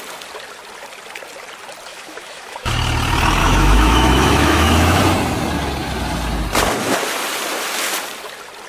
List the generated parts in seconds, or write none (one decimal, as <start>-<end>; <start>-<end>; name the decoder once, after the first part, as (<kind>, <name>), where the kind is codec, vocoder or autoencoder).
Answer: 1.9-2.7 (autoencoder, DAC-VAE); 3.4-5.0